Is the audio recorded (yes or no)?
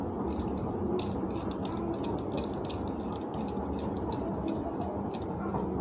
yes